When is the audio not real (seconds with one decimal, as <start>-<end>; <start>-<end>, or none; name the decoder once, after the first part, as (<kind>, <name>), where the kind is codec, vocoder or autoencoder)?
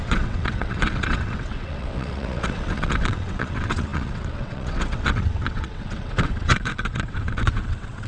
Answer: 0.0-8.1 (vocoder, WaveNeXt)